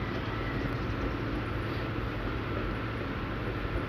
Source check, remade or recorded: recorded